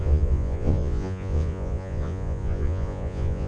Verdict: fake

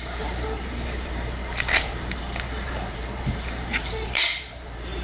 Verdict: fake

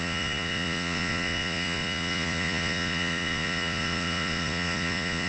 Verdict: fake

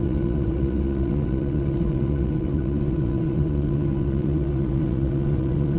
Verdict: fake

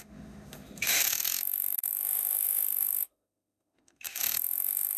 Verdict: fake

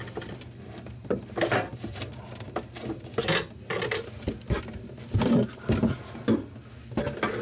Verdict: real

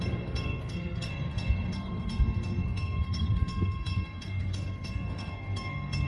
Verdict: fake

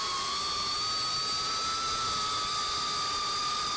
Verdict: real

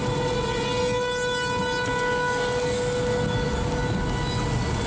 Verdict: real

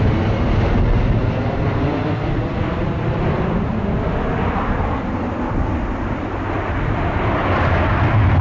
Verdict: real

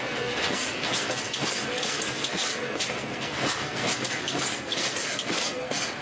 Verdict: fake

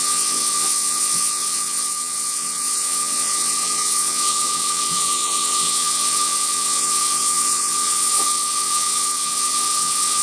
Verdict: fake